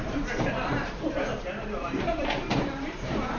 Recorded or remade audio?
remade